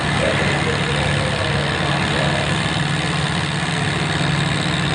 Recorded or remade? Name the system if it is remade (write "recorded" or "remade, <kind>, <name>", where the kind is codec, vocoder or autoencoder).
recorded